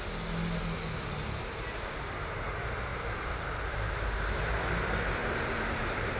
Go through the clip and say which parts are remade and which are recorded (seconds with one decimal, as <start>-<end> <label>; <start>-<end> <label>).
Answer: 0.0-2.9 recorded; 2.9-4.4 remade; 4.4-5.2 recorded; 5.2-6.2 remade